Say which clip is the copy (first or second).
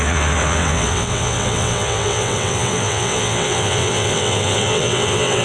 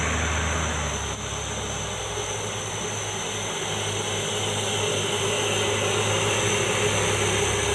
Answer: first